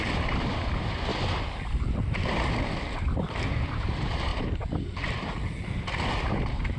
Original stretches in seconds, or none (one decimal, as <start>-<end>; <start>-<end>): 1.1-1.7